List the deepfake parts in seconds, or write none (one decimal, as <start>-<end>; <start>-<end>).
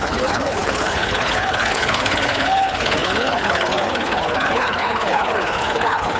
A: 0.0-6.2